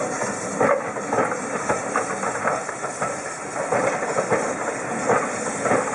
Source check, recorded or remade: recorded